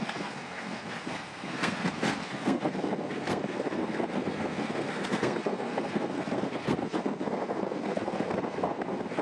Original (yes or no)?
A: no